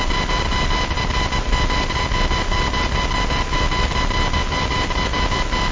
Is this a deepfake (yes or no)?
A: no